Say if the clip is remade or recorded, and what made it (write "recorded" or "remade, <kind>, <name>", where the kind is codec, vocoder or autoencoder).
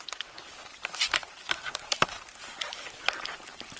remade, vocoder, BigVGAN v2